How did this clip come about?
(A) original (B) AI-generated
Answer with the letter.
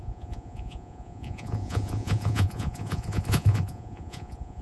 B